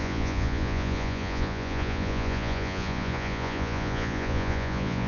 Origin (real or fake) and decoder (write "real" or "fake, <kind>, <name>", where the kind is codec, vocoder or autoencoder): fake, vocoder, Vocos